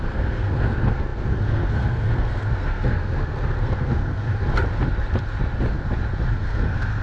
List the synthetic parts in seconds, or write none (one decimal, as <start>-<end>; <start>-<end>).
0.0-4.3; 6.3-7.0